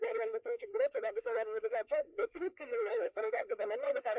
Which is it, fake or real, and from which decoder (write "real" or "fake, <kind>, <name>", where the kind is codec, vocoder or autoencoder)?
fake, codec, SNAC